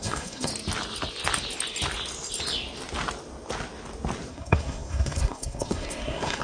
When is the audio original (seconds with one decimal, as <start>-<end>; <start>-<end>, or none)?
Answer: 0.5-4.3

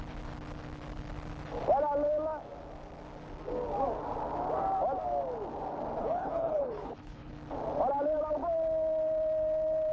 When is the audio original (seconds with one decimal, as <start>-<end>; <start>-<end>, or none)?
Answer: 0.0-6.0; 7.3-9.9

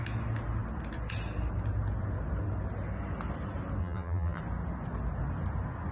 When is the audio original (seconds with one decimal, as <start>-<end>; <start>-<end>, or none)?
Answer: 0.0-3.8; 4.4-5.9